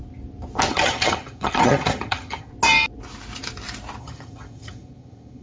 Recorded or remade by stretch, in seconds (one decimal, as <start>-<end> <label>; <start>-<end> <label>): 0.0-0.7 recorded; 0.7-2.5 remade; 2.5-4.0 recorded; 4.0-5.4 remade